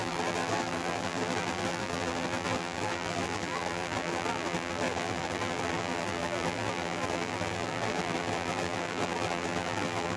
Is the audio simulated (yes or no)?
yes